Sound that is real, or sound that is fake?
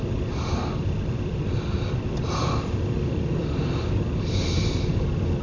real